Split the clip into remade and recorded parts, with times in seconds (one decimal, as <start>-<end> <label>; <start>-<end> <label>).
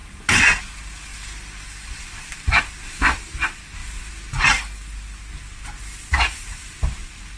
0.0-1.1 recorded; 1.1-2.3 remade; 2.3-7.4 recorded